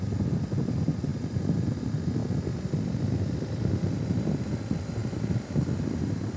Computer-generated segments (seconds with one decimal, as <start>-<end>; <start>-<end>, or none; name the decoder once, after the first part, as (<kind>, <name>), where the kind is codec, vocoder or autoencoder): none